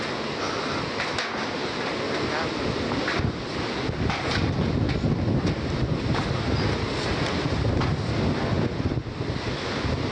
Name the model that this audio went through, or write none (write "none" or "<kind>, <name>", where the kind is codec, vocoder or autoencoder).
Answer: none